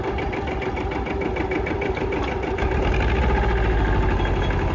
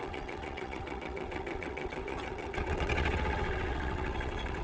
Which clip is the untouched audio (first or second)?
first